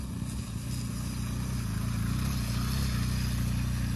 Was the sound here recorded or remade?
recorded